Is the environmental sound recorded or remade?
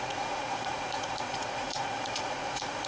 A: remade